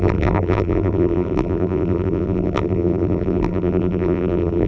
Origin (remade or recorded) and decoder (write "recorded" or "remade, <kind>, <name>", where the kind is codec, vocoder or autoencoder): remade, vocoder, BigVGAN v2